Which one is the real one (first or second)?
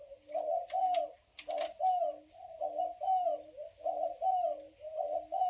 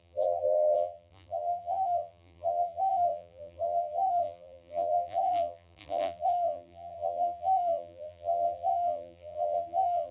first